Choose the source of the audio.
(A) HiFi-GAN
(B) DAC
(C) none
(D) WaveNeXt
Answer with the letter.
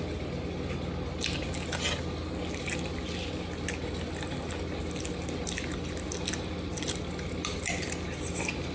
C